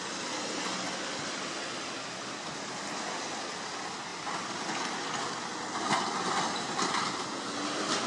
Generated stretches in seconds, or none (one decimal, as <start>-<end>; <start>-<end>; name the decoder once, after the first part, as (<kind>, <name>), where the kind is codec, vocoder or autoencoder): none